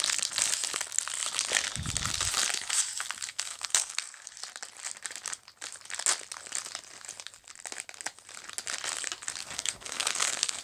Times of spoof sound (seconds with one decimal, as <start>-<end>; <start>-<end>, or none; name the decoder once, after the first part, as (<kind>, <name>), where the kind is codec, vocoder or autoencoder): 3.3-4.3 (codec, SNAC); 9.4-10.6